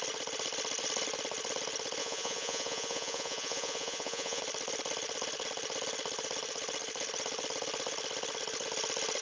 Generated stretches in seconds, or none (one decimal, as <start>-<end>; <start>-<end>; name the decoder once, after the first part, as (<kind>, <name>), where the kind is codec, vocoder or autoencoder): 2.0-4.4 (vocoder, Vocos)